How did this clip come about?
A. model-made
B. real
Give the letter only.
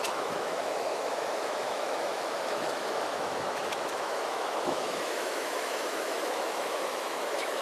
A